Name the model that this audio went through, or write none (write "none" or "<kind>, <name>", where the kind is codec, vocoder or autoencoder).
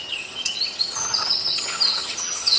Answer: vocoder, HiFi-GAN